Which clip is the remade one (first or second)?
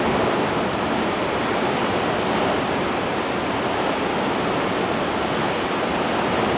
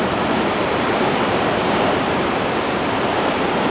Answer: second